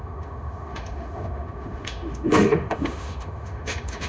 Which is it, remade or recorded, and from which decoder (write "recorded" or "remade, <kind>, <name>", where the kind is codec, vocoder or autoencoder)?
remade, autoencoder, DAC-VAE